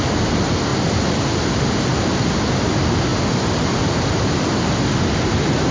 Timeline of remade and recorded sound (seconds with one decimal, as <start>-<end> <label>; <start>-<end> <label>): 0.0-5.7 recorded

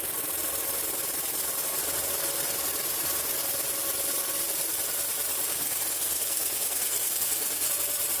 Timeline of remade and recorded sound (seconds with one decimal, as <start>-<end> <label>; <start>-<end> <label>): 0.0-5.5 recorded; 5.5-7.7 remade; 7.7-8.2 recorded

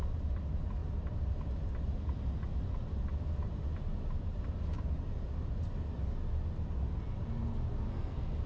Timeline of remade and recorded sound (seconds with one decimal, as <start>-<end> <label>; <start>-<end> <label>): 0.0-7.9 recorded; 7.9-8.5 remade